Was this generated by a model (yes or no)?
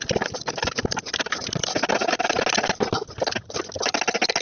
no